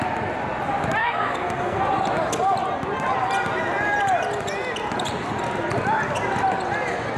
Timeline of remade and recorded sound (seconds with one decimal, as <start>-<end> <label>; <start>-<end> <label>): 0.0-1.0 recorded; 1.0-1.8 remade; 1.8-7.2 recorded